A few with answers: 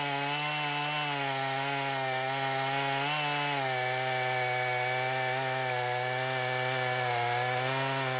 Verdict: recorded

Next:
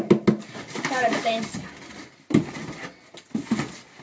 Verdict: recorded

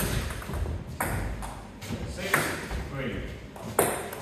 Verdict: recorded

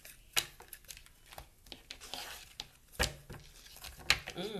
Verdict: recorded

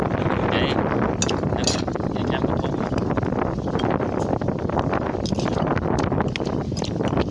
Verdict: recorded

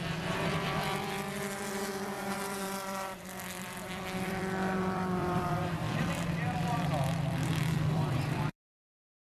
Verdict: remade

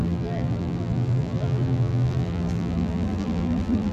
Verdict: remade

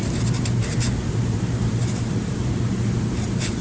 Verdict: recorded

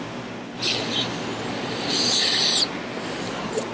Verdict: recorded